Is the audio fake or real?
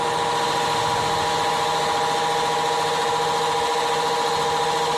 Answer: real